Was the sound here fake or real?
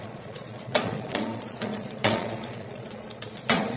fake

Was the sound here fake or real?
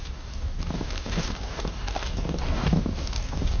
fake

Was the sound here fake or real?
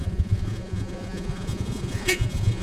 fake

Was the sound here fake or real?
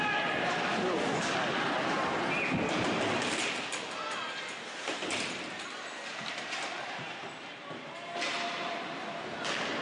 real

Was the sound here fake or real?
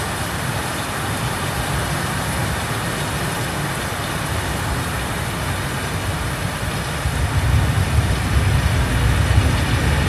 real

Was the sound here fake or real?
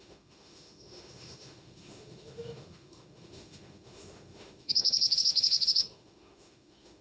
fake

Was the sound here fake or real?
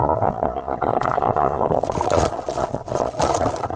fake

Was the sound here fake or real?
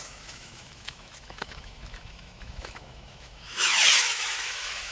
fake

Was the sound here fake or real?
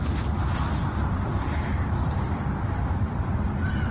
fake